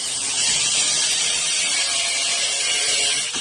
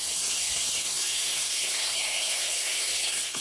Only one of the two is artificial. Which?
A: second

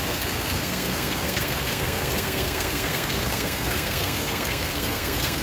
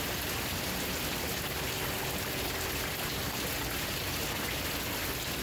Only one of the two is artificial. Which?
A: first